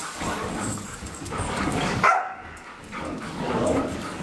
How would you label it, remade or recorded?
remade